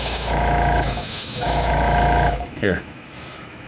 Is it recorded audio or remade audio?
remade